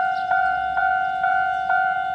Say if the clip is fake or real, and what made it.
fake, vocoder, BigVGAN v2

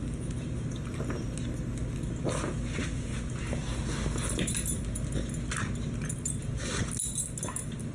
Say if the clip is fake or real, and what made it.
real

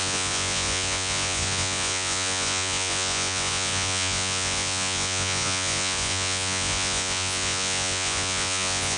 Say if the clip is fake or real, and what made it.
fake, vocoder, Vocos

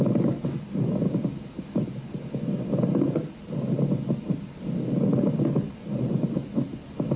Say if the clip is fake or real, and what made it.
real